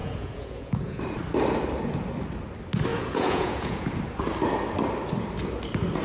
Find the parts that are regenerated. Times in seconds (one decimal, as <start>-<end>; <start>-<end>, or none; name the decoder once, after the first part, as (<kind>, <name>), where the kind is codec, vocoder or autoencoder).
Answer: 0.0-1.0 (vocoder, Vocos); 2.9-4.0